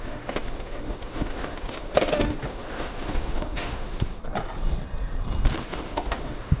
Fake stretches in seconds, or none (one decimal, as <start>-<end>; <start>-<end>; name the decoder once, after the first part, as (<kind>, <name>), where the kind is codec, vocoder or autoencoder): 0.0-4.2 (autoencoder, DAC-VAE); 5.6-6.6